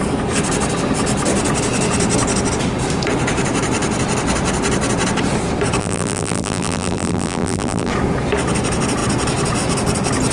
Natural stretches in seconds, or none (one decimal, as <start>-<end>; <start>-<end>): 0.0-5.8; 7.9-10.3